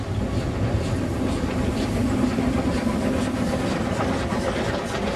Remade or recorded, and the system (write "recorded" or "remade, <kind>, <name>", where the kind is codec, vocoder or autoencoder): recorded